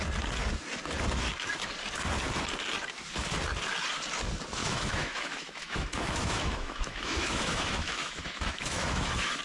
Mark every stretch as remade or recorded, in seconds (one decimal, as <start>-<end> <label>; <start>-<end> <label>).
0.0-4.6 recorded; 4.6-9.4 remade